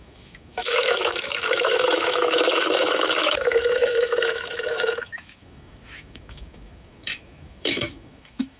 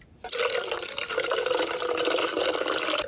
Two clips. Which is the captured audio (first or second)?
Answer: second